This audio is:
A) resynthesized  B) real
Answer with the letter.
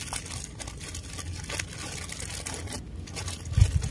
B